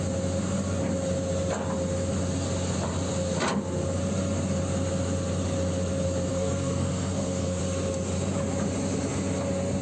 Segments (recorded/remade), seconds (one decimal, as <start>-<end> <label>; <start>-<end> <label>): 0.0-6.3 recorded; 6.3-7.6 remade; 7.6-9.8 recorded